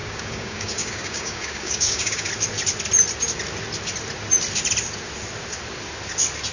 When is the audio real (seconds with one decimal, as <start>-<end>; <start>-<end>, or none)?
2.3-6.5